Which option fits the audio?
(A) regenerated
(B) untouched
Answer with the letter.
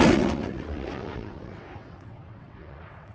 A